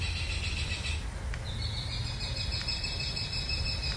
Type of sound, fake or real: real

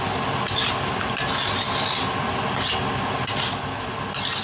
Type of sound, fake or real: real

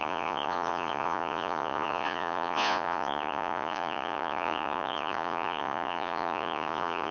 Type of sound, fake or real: fake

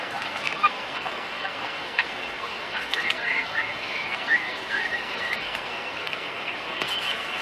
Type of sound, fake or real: fake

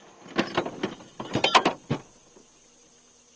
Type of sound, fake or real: real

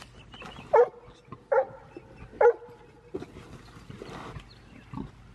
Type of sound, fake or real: real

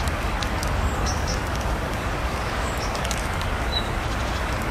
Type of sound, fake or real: fake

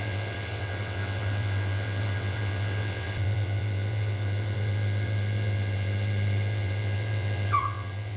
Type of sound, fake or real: fake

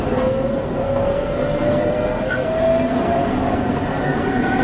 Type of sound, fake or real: fake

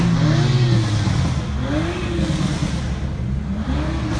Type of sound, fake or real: real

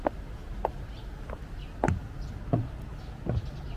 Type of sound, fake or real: real